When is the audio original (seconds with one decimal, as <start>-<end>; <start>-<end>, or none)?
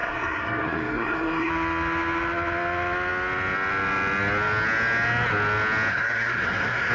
1.5-5.9